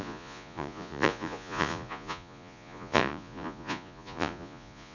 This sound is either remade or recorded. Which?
remade